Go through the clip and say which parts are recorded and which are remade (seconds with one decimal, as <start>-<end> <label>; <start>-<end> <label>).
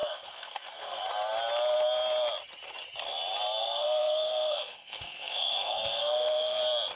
0.0-1.0 remade; 1.0-3.6 recorded; 3.6-6.6 remade; 6.6-7.0 recorded